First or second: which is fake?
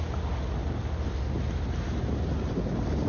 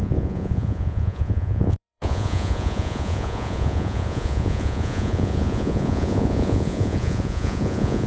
second